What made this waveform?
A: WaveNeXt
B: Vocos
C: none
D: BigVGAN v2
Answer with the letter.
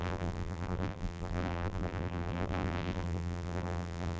D